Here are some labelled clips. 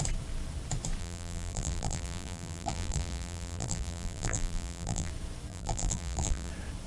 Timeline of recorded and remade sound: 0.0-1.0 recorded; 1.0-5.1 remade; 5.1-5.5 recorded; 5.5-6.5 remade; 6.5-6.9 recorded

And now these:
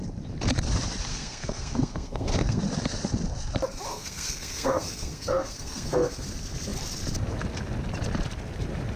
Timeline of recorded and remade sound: 0.0-1.1 recorded; 1.1-2.6 remade; 2.6-3.9 recorded; 3.9-6.3 remade; 6.3-9.0 recorded